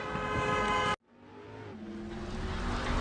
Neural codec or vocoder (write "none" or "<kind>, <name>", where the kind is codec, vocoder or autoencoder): none